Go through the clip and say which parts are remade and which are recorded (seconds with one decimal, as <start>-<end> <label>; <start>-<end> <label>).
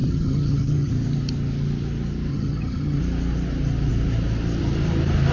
0.0-0.9 remade; 0.9-2.3 recorded; 2.3-3.0 remade; 3.0-5.3 recorded